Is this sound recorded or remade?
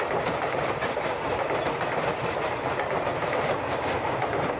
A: recorded